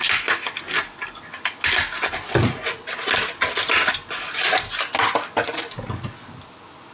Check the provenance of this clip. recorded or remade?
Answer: recorded